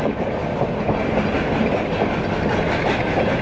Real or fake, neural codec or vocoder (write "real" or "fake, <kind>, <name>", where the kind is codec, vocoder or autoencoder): real